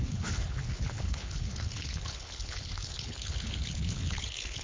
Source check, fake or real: fake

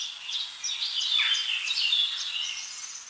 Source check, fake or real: real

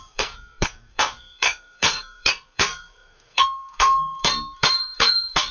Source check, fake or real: fake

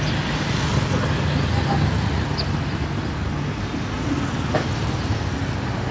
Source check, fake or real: real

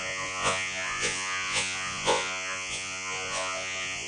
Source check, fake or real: fake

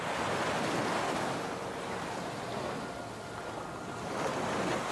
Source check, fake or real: real